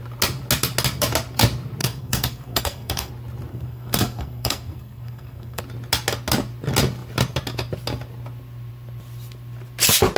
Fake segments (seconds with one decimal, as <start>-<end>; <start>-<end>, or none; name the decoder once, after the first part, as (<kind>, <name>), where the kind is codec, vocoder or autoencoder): 1.8-3.1 (codec, SNAC); 3.5-5.6